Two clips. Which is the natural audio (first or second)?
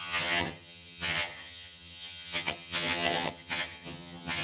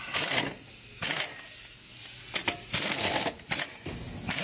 second